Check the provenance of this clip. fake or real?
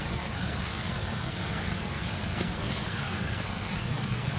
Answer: fake